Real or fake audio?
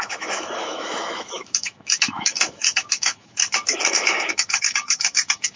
fake